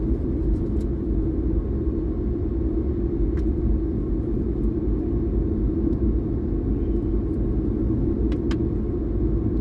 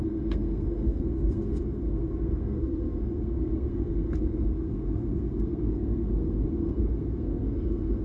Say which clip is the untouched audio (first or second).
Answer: first